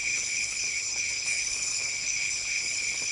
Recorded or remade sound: remade